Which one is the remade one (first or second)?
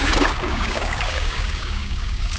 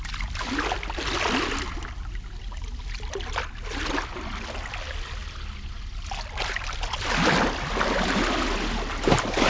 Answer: first